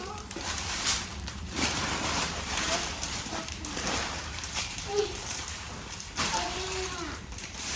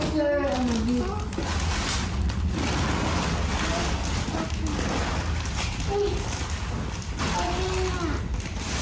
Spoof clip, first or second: first